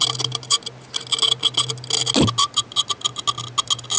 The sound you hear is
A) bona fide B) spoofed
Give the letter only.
A